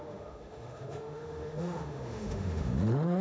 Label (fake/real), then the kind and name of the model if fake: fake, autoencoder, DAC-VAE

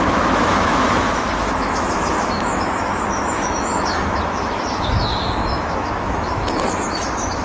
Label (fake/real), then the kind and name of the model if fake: fake, autoencoder, DAC-VAE